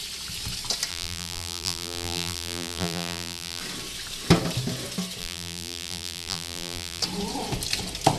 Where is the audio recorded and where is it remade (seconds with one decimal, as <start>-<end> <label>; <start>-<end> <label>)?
0.0-0.9 recorded; 0.9-3.6 remade; 3.6-5.2 recorded; 5.2-7.0 remade; 7.0-8.2 recorded